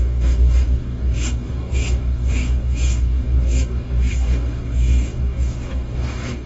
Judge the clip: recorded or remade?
remade